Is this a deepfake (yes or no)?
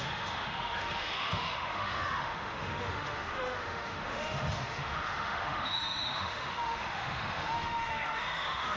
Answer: yes